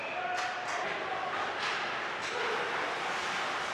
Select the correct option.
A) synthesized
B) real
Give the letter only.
B